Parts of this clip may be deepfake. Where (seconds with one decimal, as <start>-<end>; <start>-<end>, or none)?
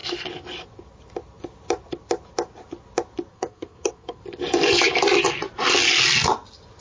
3.3-4.2